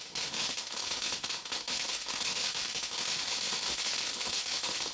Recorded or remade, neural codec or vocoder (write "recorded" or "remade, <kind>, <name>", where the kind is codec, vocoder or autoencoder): remade, autoencoder, DAC-VAE